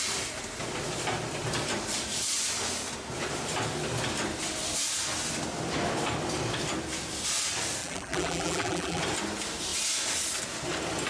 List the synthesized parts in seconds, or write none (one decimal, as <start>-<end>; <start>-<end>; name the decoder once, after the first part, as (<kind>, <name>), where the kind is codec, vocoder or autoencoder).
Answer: 7.8-9.0 (vocoder, BigVGAN v2)